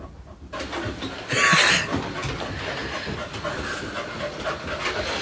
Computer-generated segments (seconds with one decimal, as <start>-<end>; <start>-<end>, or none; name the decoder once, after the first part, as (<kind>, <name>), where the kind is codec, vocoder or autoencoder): none